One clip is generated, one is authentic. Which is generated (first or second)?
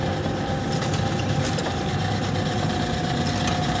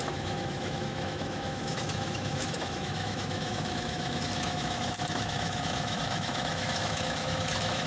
second